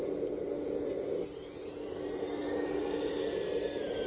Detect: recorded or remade recorded